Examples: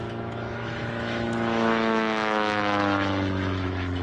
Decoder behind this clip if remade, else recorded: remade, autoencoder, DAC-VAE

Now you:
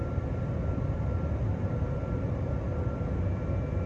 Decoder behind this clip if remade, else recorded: recorded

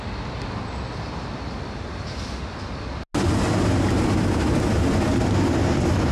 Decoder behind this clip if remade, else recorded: recorded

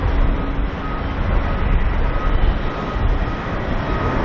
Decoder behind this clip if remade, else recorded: recorded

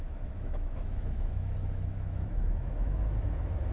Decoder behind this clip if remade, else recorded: remade, autoencoder, DAC-VAE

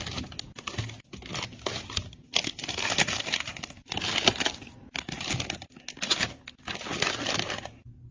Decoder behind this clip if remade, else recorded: recorded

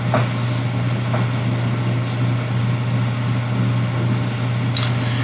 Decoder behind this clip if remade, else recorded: recorded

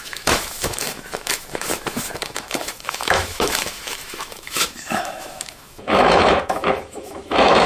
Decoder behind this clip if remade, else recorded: remade, autoencoder, DAC-VAE